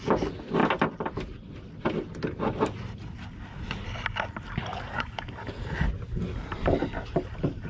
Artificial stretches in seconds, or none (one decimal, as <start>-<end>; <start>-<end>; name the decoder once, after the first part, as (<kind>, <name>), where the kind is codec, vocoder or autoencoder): 4.7-5.5 (codec, DAC)